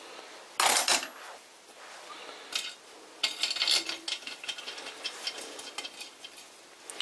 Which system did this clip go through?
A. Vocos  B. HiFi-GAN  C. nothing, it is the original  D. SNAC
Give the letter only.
C